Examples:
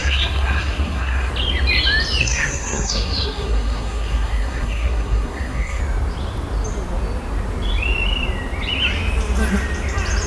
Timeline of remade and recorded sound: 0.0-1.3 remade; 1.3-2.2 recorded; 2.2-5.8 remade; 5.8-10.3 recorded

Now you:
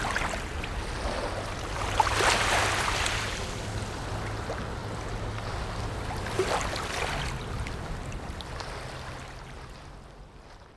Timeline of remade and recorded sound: 0.0-10.8 recorded

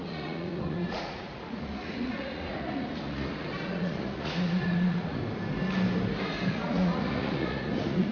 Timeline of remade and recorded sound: 0.0-5.2 remade; 5.2-6.5 recorded; 6.5-8.1 remade

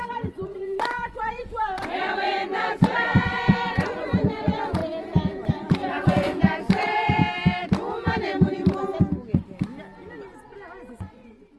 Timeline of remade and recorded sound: 0.0-4.8 remade; 4.8-5.5 recorded; 5.5-7.2 remade; 7.2-10.9 recorded; 10.9-11.6 remade

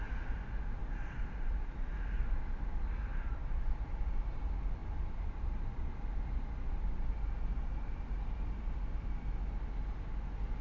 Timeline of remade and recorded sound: 0.0-0.8 recorded; 0.8-1.7 remade; 1.7-3.1 recorded; 3.1-3.8 remade; 3.8-4.8 recorded; 4.8-9.2 remade; 9.2-10.6 recorded

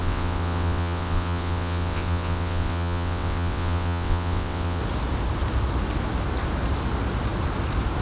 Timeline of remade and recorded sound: 0.0-4.8 remade; 4.8-8.0 recorded